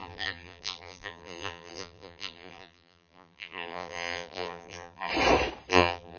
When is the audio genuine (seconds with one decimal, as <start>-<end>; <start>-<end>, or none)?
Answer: 5.1-5.7